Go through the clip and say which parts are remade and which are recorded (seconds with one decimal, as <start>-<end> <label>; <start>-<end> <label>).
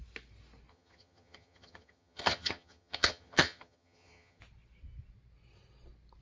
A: 0.0-0.7 recorded; 0.7-4.4 remade; 4.4-6.2 recorded